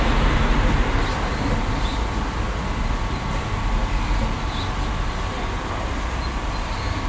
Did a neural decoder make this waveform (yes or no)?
no